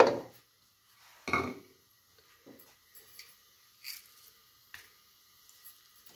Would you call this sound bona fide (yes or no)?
yes